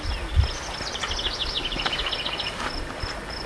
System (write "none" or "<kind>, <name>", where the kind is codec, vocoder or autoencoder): none